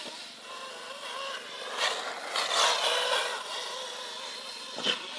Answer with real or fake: real